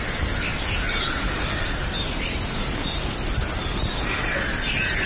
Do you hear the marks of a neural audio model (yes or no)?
no